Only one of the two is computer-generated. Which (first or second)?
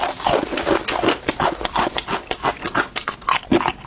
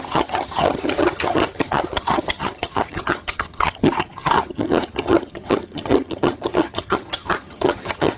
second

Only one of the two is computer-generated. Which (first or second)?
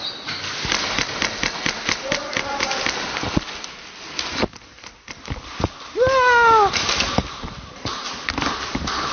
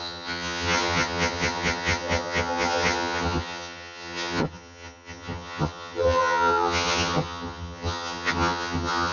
second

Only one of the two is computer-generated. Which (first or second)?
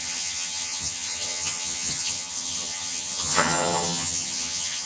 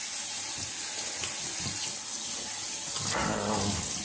first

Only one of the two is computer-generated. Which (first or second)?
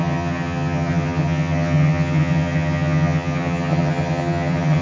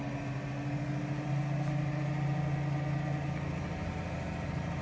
first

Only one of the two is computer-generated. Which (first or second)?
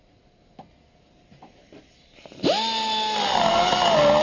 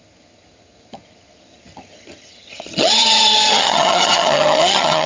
second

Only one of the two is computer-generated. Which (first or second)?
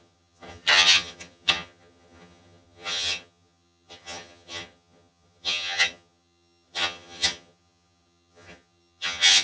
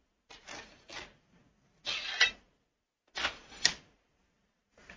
first